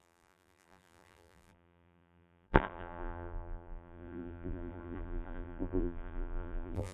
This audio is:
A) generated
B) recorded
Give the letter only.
A